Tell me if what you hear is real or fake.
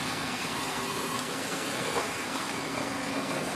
fake